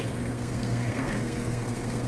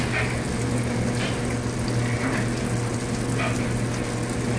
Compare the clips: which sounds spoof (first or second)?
first